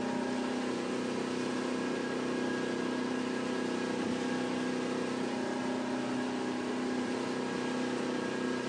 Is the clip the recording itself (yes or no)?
yes